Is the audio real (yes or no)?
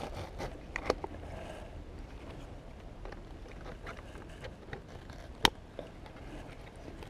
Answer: yes